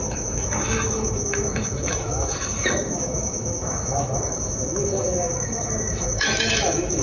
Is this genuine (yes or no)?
no